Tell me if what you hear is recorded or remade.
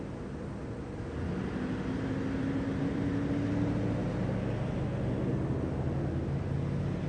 recorded